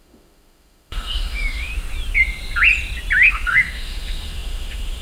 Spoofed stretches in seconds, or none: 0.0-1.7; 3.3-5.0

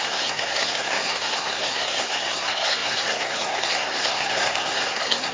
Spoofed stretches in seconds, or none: 0.0-5.3

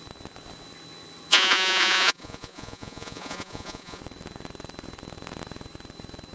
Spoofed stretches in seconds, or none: 1.3-4.0

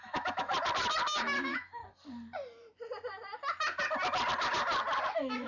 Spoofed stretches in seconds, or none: 0.0-0.5; 1.2-1.8; 5.1-5.5

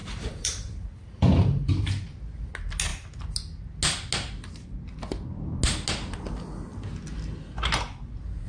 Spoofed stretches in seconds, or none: 0.0-2.4